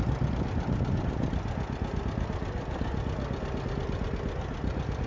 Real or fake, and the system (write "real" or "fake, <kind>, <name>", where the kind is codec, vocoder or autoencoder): real